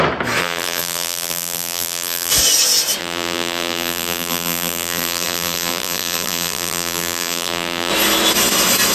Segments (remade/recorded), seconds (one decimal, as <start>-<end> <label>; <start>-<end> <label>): 0.0-0.4 recorded; 0.4-2.3 remade; 2.3-3.0 recorded; 3.0-7.9 remade; 7.9-8.9 recorded